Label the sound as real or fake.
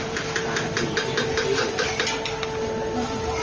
real